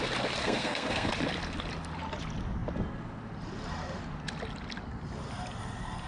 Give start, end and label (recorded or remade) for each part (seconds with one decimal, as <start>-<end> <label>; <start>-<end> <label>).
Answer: 0.0-0.4 recorded; 0.4-1.1 remade; 1.1-6.1 recorded